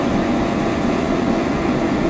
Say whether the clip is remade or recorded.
remade